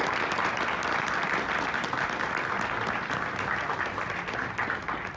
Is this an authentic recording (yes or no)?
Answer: yes